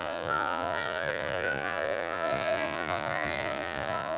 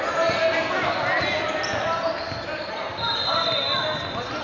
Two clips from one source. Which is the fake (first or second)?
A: first